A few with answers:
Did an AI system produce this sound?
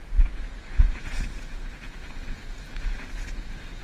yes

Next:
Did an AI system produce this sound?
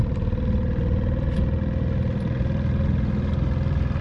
no